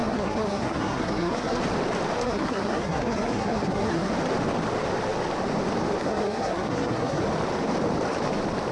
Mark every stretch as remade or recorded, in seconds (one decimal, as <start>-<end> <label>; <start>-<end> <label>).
0.0-1.6 remade; 1.6-2.2 recorded; 2.2-4.1 remade; 4.1-6.0 recorded; 6.0-7.2 remade; 7.2-8.7 recorded